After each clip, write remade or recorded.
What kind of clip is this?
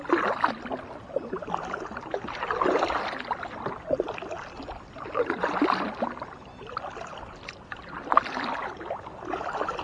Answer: recorded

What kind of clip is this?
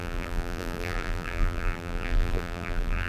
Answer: remade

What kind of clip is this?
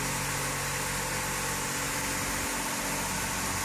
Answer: recorded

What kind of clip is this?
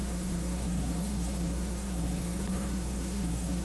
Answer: remade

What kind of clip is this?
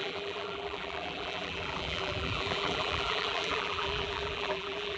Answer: remade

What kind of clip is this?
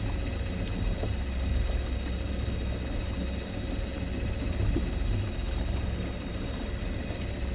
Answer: recorded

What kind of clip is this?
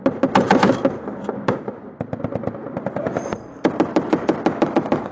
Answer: recorded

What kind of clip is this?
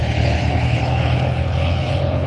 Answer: remade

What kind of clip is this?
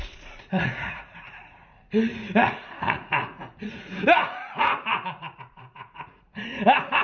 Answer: remade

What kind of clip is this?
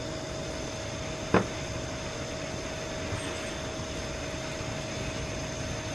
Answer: recorded